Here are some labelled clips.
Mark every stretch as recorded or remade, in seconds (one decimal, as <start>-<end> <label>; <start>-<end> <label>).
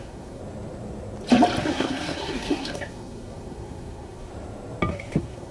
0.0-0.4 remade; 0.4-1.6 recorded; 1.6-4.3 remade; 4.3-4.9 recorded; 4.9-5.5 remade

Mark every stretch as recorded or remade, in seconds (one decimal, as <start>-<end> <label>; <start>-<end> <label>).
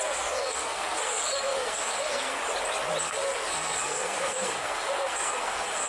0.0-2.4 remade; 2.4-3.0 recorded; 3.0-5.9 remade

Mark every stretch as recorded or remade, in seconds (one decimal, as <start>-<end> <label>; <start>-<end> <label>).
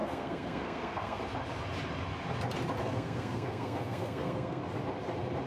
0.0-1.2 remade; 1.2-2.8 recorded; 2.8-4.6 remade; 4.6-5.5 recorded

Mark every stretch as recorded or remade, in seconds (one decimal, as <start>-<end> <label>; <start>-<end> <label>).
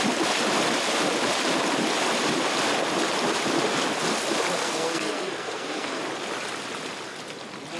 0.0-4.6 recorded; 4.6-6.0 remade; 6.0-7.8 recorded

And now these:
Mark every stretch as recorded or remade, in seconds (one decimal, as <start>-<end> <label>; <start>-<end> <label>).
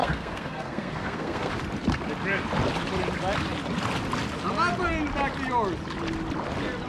0.0-1.5 remade; 1.5-6.9 recorded